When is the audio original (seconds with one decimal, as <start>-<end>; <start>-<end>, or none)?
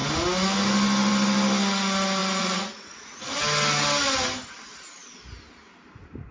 0.0-2.2; 3.4-6.3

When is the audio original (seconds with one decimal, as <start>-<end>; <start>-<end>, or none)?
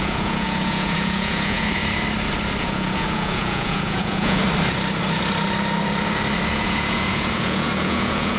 1.8-2.6; 4.4-6.5